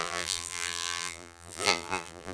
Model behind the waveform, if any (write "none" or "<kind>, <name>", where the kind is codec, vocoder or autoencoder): vocoder, BigVGAN v2